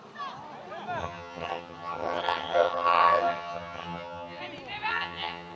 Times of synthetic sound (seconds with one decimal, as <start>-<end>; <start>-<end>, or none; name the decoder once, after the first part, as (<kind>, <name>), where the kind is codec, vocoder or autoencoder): 1.0-4.4 (vocoder, HiFi-GAN); 4.9-5.6